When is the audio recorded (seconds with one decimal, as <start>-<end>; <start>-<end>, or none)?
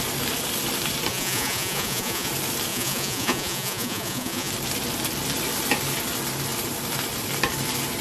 0.0-1.1; 2.3-2.7; 4.5-8.0